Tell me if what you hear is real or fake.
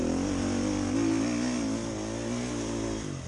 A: real